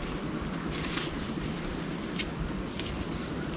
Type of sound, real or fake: real